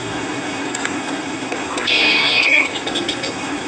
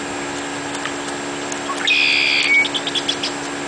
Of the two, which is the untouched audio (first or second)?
second